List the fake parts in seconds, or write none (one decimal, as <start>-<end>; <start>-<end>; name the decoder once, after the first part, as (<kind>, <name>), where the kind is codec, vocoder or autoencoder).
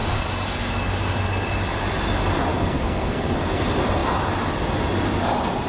2.5-3.6 (codec, SNAC)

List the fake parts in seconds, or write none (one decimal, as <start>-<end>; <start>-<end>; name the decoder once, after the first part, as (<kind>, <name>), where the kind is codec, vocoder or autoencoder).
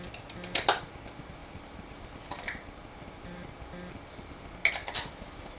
none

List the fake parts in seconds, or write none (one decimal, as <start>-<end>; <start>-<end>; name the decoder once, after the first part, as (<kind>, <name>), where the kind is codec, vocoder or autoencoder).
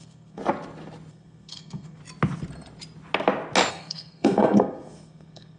0.0-0.4 (codec, SNAC); 1.1-2.0; 3.7-5.6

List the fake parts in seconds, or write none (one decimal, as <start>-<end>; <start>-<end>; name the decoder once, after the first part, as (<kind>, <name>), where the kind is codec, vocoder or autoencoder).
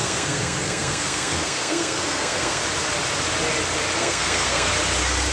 0.0-2.6 (codec, SNAC); 4.0-4.7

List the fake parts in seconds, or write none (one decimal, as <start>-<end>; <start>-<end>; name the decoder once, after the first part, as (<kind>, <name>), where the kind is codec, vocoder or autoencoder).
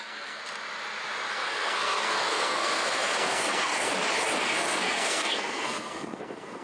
0.0-0.4 (codec, SNAC); 1.3-3.9; 4.4-6.6